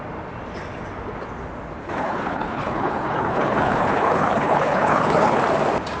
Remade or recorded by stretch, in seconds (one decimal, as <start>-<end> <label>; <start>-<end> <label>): 0.0-1.8 recorded; 1.8-5.4 remade; 5.4-6.0 recorded